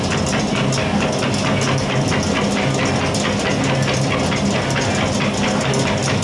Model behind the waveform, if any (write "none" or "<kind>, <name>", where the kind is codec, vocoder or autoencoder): none